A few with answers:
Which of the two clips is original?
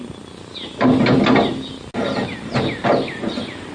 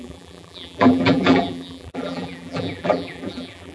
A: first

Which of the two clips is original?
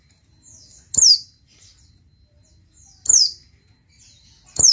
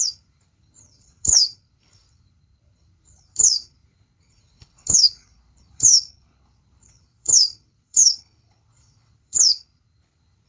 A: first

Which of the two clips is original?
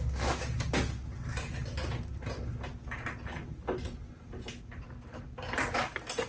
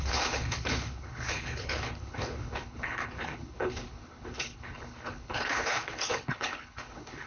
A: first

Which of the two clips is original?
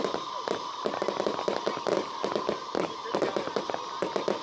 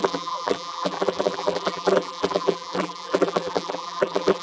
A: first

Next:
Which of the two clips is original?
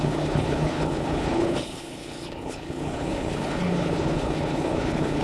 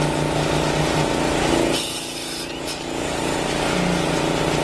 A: second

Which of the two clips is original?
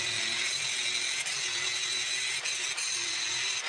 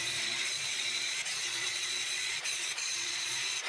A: first